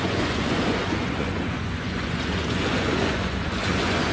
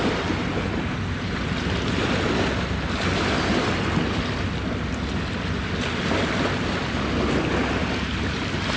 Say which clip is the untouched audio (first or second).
second